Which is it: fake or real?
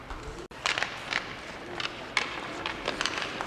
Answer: real